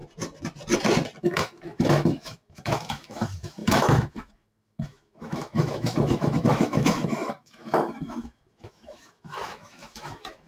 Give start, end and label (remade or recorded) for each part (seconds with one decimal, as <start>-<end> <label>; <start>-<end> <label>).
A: 0.0-1.2 recorded; 1.2-10.5 remade